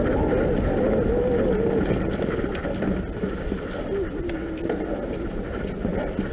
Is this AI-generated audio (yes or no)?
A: no